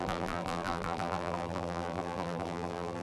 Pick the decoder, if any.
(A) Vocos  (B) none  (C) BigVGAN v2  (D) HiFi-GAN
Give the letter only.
C